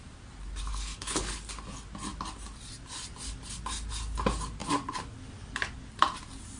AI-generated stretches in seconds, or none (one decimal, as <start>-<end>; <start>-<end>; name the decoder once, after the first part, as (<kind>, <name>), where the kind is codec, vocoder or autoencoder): 0.7-1.5 (codec, HILCodec)